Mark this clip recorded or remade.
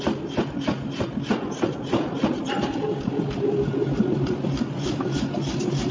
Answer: recorded